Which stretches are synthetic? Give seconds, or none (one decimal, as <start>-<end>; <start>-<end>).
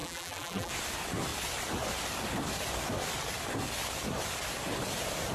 0.0-0.7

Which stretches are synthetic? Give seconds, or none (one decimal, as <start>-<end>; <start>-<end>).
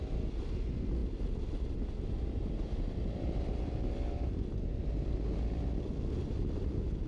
none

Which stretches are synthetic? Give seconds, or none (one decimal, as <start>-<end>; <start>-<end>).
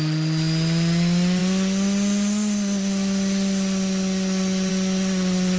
none